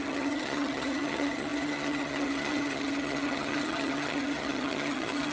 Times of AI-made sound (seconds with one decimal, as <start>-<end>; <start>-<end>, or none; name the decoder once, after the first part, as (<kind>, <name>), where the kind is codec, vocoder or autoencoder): 0.0-5.3 (vocoder, HiFi-GAN)